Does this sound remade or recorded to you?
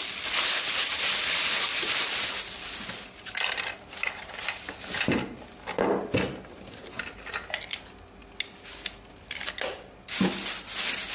recorded